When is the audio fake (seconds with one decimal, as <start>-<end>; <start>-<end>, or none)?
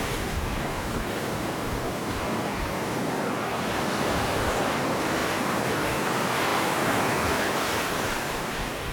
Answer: 0.0-8.9